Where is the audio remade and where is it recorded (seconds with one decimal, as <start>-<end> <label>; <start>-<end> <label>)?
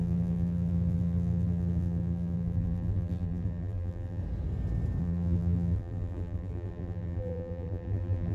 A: 0.0-4.2 remade; 4.2-5.0 recorded; 5.0-8.3 remade